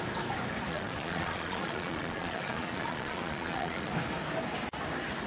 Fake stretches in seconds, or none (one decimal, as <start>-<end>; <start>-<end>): 0.7-3.9

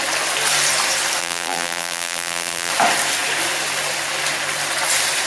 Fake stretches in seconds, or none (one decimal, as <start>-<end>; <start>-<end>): 1.2-2.7

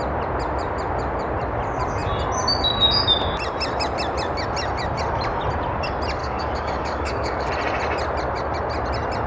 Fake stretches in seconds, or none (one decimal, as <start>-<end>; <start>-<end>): 6.2-7.5

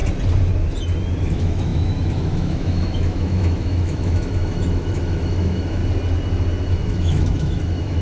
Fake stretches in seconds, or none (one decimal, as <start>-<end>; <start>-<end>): 1.2-5.8; 6.7-8.0